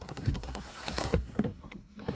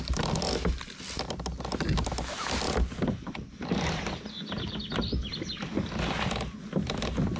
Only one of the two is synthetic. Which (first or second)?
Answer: first